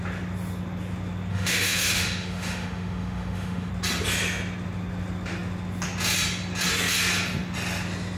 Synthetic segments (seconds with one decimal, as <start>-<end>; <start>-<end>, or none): 1.3-3.7